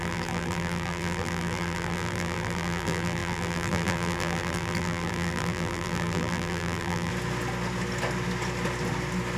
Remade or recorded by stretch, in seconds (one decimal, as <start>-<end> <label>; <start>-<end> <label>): 0.0-7.1 remade; 7.1-9.4 recorded